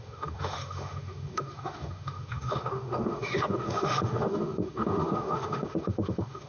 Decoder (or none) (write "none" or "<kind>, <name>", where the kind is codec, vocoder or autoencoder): autoencoder, DAC-VAE